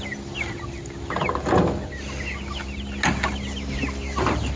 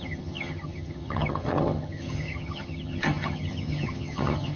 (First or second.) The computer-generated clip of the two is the second